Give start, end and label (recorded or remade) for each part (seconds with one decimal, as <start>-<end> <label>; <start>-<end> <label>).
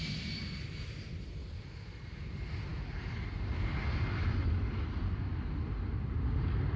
0.0-6.8 recorded